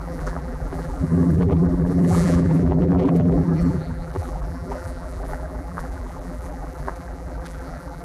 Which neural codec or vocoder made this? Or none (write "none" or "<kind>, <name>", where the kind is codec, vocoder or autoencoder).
vocoder, BigVGAN v2